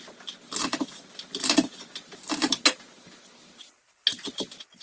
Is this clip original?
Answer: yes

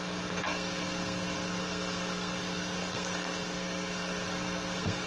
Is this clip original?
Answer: no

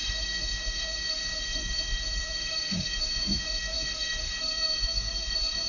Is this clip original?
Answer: no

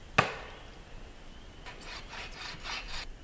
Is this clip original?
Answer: yes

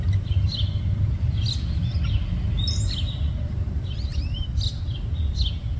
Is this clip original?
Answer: yes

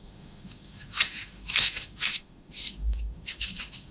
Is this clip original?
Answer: no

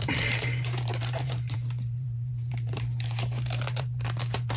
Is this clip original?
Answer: no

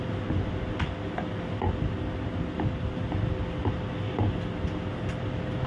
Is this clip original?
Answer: yes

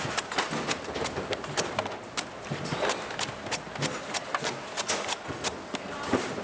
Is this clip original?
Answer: yes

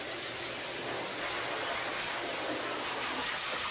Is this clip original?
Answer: yes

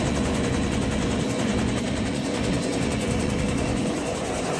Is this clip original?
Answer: no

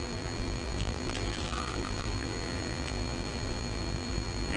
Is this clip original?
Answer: no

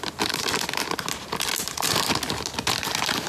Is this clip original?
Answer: yes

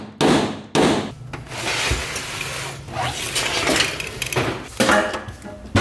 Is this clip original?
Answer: yes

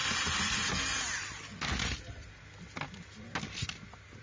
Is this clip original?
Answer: yes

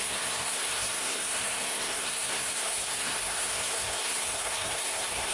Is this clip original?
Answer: no